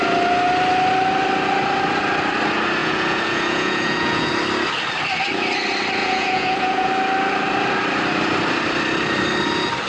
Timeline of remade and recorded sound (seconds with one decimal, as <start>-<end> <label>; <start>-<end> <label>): 0.0-2.8 recorded; 2.8-4.3 remade; 4.3-6.0 recorded; 6.0-6.9 remade; 6.9-9.9 recorded